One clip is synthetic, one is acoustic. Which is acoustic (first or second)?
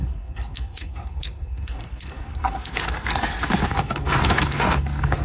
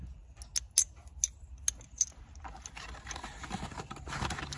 second